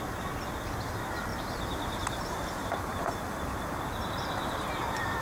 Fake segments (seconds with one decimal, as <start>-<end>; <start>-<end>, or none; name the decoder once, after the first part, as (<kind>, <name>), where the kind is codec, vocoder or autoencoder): 1.3-3.8 (vocoder, BigVGAN v2); 4.4-5.2